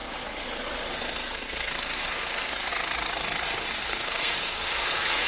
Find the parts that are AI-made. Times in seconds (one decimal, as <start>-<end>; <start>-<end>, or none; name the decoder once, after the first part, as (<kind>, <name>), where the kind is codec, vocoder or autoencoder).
0.9-2.7 (codec, SNAC); 3.7-5.3